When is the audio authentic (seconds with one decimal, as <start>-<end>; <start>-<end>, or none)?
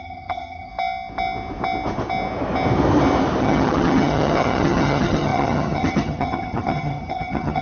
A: 0.7-3.4